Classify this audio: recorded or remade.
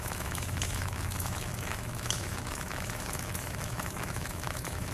remade